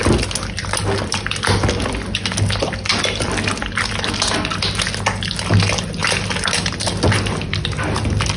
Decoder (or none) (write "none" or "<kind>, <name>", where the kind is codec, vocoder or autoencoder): none